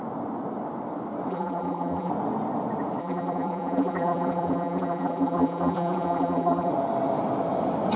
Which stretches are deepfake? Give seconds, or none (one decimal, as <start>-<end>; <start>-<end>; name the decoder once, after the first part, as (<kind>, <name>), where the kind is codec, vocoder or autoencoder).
1.3-2.1 (vocoder, BigVGAN v2); 3.0-6.7